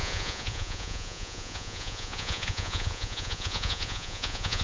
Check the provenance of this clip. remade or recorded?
remade